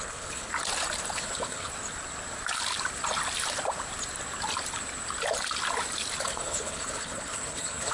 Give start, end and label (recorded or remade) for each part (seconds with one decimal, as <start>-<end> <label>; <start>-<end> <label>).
0.0-0.5 remade; 0.5-1.1 recorded; 1.1-1.7 remade; 1.7-6.2 recorded; 6.2-7.9 remade

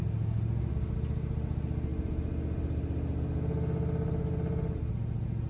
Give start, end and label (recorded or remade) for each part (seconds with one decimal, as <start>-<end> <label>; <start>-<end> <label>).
0.0-5.5 recorded